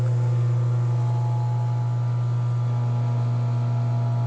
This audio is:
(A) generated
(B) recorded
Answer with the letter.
B